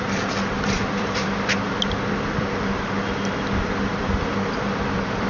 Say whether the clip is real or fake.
fake